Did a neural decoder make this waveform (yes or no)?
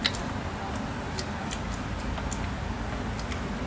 no